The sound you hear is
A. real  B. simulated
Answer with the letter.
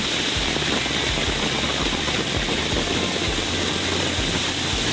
A